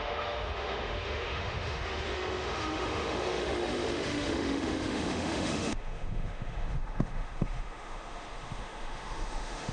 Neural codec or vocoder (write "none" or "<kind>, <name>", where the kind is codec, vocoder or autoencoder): autoencoder, DAC-VAE